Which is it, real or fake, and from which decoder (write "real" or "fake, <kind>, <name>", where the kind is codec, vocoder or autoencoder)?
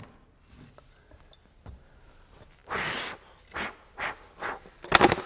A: real